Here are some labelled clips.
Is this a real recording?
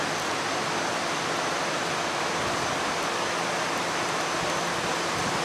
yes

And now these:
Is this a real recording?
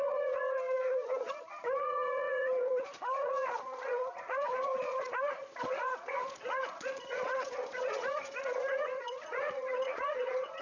no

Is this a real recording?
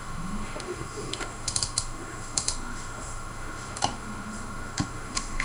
no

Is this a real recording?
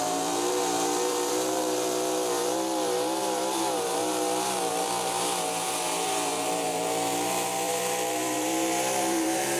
no